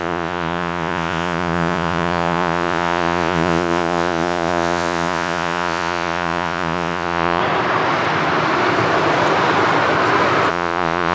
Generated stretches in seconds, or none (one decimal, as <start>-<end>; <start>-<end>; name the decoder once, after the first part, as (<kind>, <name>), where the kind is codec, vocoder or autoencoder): 0.0-7.4 (vocoder, Vocos); 10.5-11.1